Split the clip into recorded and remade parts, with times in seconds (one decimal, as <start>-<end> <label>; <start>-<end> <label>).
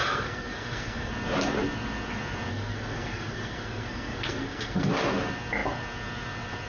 0.0-1.1 remade; 1.1-2.5 recorded; 2.5-4.9 remade; 4.9-6.7 recorded